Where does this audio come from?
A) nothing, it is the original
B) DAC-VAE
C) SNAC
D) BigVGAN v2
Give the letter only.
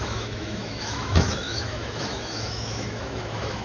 B